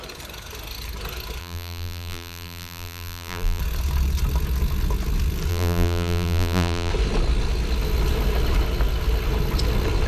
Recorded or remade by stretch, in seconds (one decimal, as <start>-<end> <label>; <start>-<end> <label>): 0.0-1.4 recorded; 1.4-3.6 remade; 3.6-5.5 recorded; 5.5-6.9 remade; 6.9-10.1 recorded